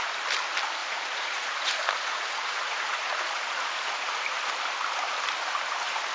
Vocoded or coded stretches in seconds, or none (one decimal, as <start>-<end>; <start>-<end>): 0.8-4.2